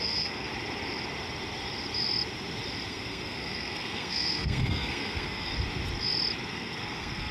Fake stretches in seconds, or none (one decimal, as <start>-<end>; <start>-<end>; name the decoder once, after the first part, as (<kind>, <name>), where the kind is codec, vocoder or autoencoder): 0.0-0.5 (codec, SNAC); 2.9-5.5; 6.5-7.3